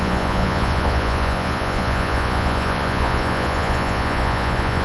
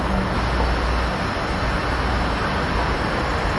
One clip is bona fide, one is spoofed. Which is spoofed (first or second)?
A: first